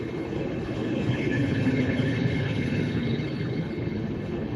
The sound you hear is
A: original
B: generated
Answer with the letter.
B